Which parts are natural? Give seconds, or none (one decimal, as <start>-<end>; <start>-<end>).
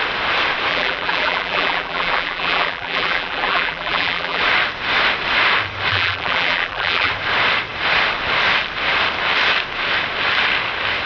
0.0-0.7; 4.4-5.9; 7.1-11.1